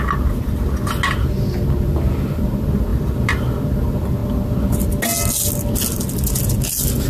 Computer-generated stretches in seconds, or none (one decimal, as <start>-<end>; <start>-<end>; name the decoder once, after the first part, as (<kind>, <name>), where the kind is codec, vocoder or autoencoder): 2.9-3.6 (vocoder, BigVGAN v2)